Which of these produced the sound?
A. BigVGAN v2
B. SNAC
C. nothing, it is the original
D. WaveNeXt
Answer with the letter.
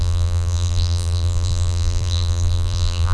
A